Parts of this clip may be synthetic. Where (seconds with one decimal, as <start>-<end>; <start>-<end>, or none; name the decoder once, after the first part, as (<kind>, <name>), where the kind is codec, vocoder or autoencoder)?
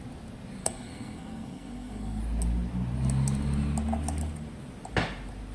0.6-2.2 (codec, SNAC)